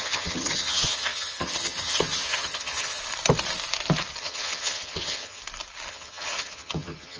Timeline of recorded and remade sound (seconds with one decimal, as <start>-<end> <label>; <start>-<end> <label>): 0.0-3.0 remade; 3.0-4.2 recorded; 4.2-5.4 remade; 5.4-5.9 recorded; 5.9-7.2 remade